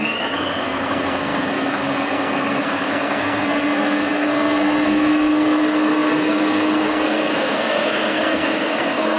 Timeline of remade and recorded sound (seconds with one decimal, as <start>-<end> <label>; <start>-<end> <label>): 0.0-9.2 remade